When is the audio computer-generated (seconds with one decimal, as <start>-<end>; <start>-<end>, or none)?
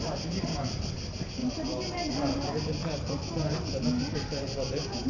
0.0-1.4; 2.1-2.8; 3.4-5.1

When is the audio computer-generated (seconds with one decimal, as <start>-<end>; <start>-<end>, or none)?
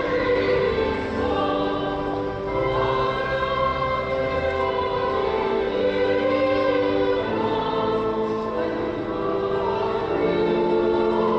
none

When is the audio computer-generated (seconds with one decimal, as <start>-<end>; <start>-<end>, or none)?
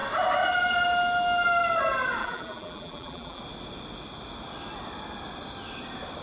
2.2-3.4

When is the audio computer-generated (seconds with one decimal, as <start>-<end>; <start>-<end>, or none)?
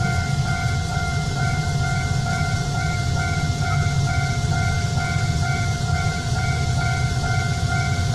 0.9-1.7; 2.3-3.0; 5.9-6.4